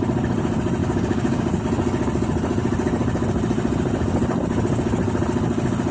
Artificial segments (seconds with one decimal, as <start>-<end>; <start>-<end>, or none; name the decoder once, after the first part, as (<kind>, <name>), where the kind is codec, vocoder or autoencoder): 0.8-1.6 (codec, DAC)